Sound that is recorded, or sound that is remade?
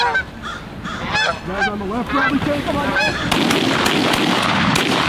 recorded